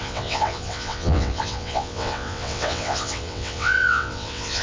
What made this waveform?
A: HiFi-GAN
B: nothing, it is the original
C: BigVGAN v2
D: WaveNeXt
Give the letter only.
D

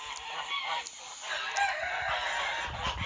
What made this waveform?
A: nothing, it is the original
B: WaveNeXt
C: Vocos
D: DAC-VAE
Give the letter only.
A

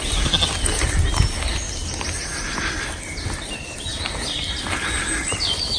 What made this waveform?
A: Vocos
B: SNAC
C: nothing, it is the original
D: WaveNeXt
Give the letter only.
C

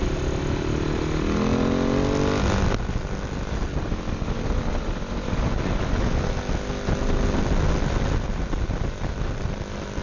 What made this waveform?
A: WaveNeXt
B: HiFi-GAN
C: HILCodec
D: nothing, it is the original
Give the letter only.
D